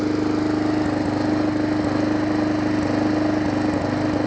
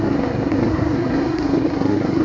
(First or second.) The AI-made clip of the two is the second